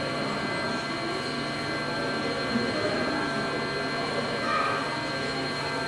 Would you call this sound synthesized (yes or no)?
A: no